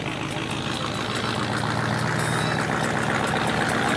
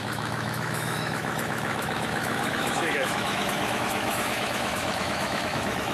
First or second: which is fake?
second